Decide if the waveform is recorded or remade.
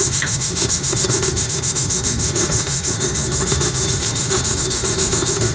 remade